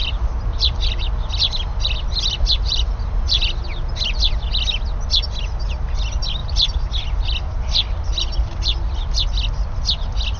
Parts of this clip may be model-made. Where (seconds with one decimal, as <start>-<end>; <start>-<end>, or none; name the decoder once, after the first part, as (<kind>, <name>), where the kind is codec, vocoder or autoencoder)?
0.5-3.0 (vocoder, BigVGAN v2)